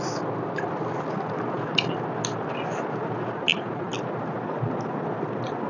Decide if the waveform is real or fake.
real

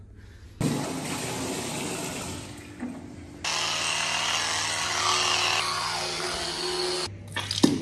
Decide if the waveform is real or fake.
real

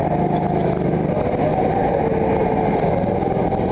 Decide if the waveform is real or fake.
real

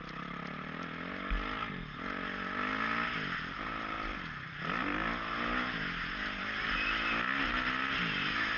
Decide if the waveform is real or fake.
real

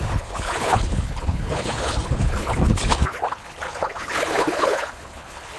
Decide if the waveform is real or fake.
fake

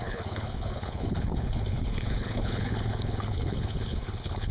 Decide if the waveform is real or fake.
fake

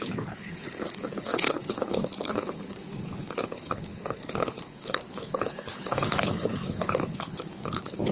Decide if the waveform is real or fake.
fake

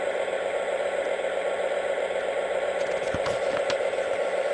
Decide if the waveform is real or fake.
real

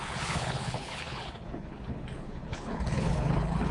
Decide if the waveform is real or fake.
fake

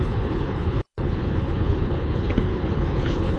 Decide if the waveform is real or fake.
fake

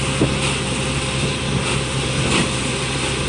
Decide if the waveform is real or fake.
real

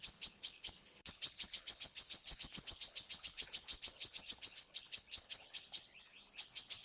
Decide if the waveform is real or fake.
fake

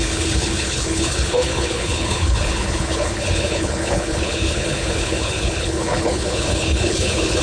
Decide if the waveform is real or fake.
fake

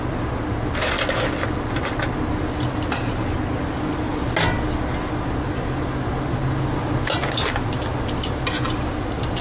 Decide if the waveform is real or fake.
real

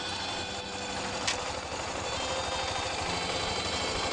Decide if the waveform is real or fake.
real